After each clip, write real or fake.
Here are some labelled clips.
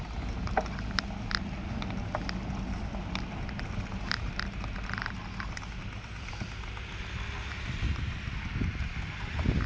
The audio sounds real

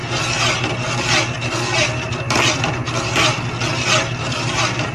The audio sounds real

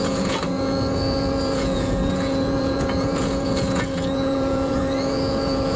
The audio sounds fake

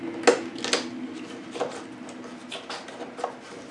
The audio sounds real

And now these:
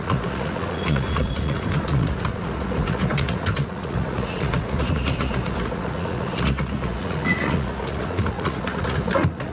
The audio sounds fake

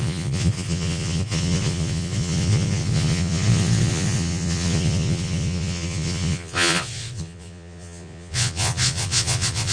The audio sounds fake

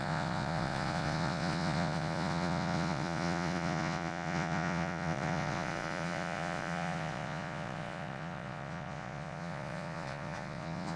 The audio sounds fake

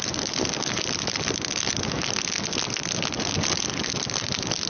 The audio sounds real